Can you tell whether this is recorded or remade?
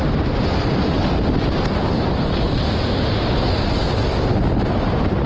recorded